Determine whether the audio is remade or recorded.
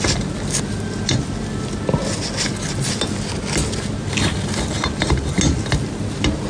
recorded